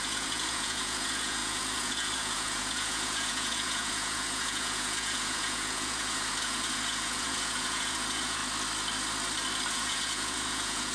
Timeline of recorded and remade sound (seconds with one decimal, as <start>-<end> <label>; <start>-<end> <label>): 0.0-8.4 remade; 8.4-9.7 recorded; 9.7-10.9 remade